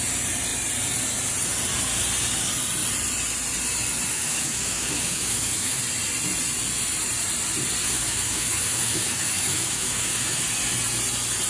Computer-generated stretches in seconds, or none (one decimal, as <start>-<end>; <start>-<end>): 4.1-5.8; 7.8-10.4